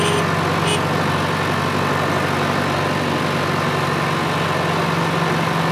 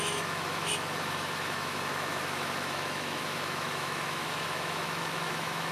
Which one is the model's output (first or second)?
second